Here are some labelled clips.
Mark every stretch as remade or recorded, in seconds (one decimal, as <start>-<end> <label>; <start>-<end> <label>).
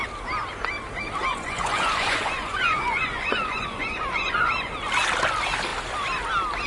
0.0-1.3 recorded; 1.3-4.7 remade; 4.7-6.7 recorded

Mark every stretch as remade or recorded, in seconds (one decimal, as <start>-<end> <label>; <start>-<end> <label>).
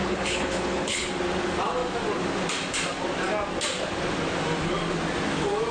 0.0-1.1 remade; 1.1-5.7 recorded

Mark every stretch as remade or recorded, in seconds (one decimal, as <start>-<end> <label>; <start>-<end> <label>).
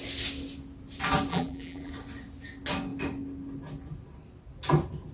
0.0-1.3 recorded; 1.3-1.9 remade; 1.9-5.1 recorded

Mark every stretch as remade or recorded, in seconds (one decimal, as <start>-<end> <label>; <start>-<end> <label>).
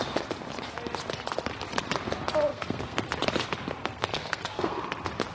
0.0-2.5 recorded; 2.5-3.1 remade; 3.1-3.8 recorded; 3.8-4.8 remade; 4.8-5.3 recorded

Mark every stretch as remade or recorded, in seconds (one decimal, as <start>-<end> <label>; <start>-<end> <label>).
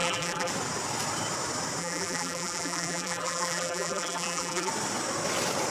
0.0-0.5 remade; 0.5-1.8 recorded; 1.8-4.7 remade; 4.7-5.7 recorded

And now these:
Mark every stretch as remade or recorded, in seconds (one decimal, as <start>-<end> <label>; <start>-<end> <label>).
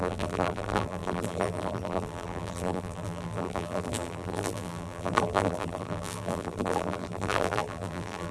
0.0-8.3 remade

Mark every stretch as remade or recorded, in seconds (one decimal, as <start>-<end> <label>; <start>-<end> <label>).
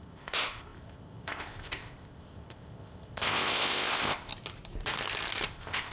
0.0-4.3 remade; 4.3-5.5 recorded; 5.5-5.9 remade